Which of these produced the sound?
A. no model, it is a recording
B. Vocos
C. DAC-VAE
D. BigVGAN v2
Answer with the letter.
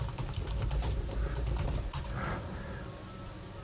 A